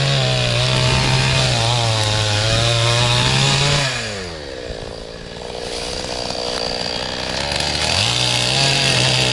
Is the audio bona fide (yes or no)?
yes